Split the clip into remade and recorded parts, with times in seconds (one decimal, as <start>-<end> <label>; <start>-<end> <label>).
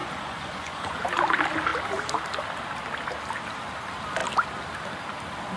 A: 0.0-1.0 remade; 1.0-5.6 recorded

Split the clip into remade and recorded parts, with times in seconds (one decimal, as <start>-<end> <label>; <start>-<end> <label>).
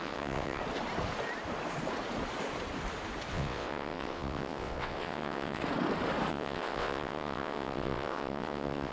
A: 0.0-0.6 remade; 0.6-3.3 recorded; 3.3-5.6 remade; 5.6-6.3 recorded; 6.3-8.9 remade